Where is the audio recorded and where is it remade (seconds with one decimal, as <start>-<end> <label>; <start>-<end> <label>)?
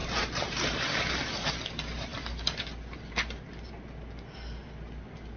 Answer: 0.0-1.5 remade; 1.5-5.4 recorded